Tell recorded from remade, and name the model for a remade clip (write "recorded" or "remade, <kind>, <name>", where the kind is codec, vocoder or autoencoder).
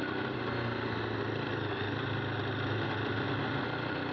recorded